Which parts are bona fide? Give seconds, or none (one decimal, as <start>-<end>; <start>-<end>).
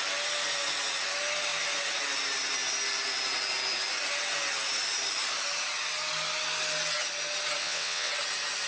0.0-7.6; 8.1-8.7